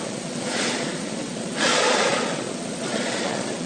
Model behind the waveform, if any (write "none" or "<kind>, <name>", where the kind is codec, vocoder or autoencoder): vocoder, Vocos